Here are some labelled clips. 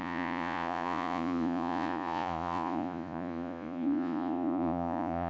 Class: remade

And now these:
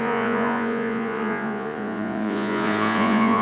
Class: remade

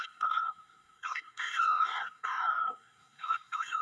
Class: remade